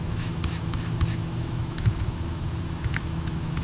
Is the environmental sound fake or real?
fake